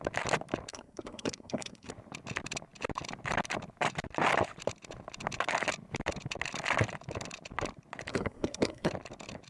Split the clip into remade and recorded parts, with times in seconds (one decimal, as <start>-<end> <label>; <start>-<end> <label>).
0.0-0.7 recorded; 0.7-1.9 remade; 1.9-8.1 recorded; 8.1-8.9 remade; 8.9-9.5 recorded